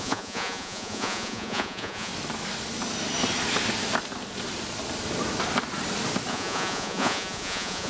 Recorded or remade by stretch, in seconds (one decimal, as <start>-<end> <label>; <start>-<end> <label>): 0.0-2.1 remade; 2.1-6.3 recorded; 6.3-7.9 remade